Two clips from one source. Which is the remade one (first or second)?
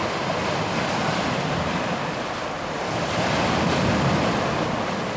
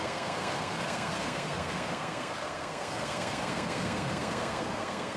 second